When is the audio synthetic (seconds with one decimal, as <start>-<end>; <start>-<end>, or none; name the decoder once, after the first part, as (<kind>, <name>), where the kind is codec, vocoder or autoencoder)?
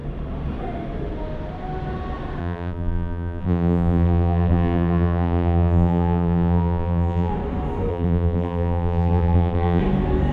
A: 2.4-7.3 (vocoder, BigVGAN v2); 7.9-9.8